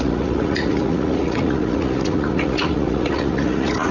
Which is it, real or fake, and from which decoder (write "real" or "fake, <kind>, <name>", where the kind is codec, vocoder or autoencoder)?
fake, vocoder, Vocos